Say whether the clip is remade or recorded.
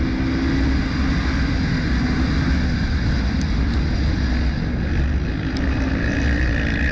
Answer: recorded